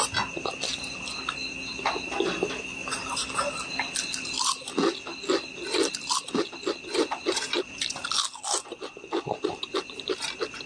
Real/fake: real